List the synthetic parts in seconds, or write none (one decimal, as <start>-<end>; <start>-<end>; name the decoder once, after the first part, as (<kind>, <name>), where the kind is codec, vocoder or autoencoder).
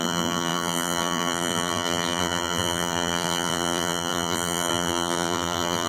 0.0-5.9 (vocoder, BigVGAN v2)